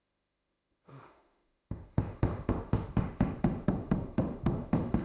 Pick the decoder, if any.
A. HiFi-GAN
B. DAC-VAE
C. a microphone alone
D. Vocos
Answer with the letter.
B